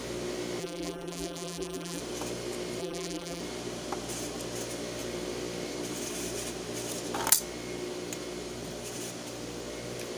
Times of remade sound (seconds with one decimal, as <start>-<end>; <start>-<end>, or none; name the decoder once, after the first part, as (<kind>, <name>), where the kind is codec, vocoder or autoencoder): 0.6-2.0 (vocoder, BigVGAN v2); 2.8-3.4